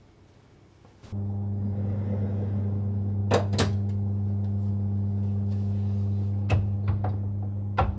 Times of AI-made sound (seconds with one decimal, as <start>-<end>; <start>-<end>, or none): none